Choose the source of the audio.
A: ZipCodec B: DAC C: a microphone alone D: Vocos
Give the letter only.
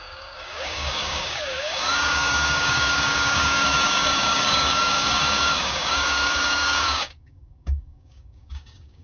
B